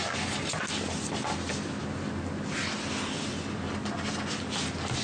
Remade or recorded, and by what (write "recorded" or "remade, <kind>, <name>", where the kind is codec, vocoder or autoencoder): recorded